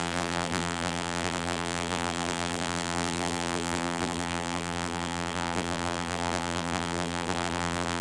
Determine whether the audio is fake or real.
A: fake